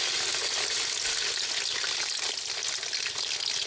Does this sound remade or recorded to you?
recorded